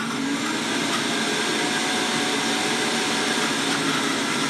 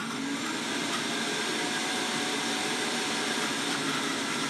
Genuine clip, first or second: first